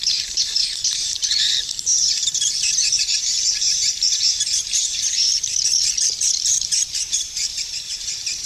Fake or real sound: fake